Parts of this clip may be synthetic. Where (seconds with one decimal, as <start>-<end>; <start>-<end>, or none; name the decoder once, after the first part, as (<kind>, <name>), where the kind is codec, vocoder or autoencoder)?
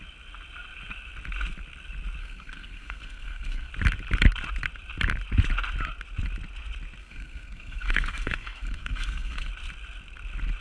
2.2-3.7 (codec, SNAC); 7.0-9.5